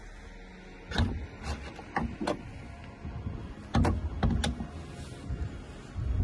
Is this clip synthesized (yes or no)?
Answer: no